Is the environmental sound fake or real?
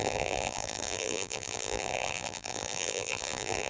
fake